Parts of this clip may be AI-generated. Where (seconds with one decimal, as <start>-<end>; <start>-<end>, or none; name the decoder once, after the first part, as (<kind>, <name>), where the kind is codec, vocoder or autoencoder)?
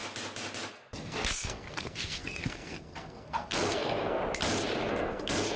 0.7-4.2 (codec, SNAC); 4.9-5.6